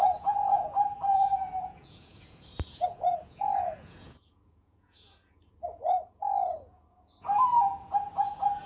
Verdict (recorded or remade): remade